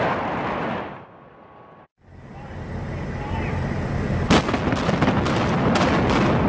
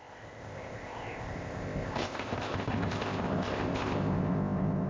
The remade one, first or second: second